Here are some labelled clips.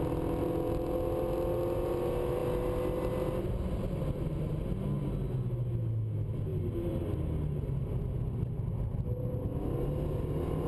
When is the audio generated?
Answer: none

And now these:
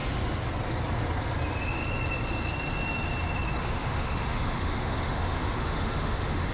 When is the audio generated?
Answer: 3.6-6.5 (autoencoder, DAC-VAE)

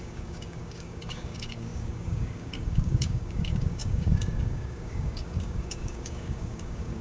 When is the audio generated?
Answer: 0.0-7.0 (codec, DAC)

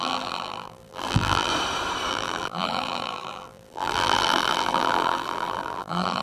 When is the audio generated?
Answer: 0.0-1.5 (vocoder, BigVGAN v2); 2.1-6.2

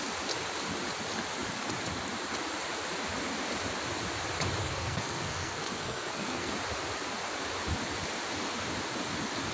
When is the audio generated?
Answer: 4.6-6.5 (codec, SNAC)

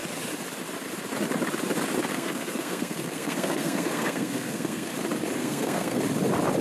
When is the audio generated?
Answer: 2.1-4.9 (codec, SNAC); 5.4-6.0